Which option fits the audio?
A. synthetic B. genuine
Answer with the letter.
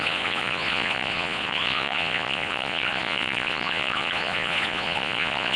A